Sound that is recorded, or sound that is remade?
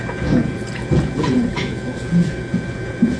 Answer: remade